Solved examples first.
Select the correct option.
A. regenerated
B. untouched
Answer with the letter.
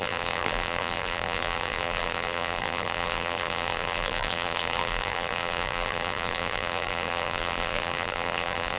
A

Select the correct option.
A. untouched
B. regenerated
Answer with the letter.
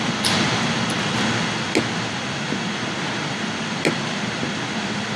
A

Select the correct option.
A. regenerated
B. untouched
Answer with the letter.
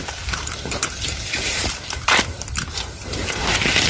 A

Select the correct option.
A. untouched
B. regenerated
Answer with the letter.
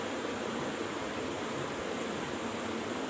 A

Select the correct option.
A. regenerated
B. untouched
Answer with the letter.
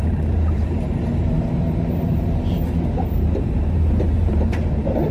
A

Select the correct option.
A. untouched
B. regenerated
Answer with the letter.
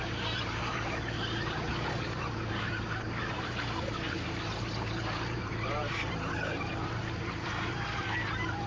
B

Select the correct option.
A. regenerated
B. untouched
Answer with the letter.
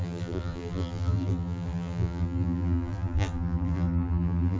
A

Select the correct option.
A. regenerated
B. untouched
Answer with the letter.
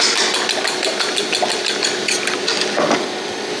B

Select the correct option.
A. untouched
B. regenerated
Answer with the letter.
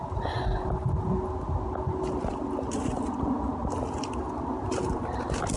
A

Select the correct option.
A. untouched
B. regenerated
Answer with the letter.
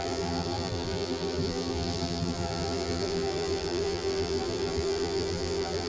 B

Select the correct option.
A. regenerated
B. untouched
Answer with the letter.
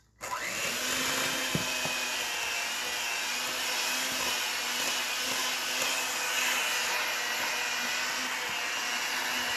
B